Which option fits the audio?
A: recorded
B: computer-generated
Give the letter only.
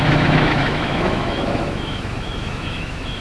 B